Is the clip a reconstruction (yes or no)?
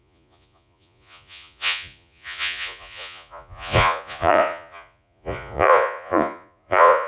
yes